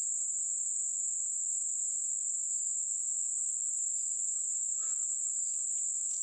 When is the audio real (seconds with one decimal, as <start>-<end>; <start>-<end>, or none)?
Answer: 0.0-3.2; 3.8-4.7; 5.2-6.2